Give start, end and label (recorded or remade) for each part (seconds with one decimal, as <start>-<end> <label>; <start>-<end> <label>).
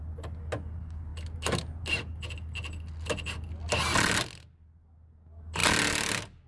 0.0-6.5 recorded